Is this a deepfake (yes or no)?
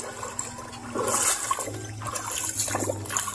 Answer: no